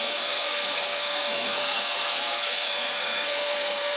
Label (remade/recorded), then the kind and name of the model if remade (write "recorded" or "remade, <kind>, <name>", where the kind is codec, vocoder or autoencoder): remade, codec, SNAC